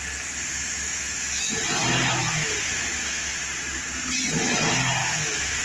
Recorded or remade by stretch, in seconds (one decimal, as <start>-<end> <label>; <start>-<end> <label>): 0.0-0.5 recorded; 0.5-1.6 remade; 1.6-2.2 recorded; 2.2-3.4 remade; 3.4-5.0 recorded; 5.0-5.6 remade